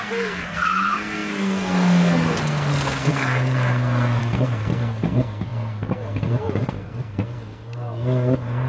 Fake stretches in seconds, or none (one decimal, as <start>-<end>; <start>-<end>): 0.0-8.7